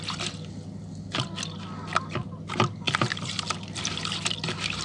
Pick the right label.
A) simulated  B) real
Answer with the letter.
B